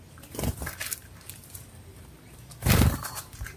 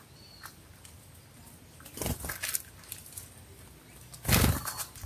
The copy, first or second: first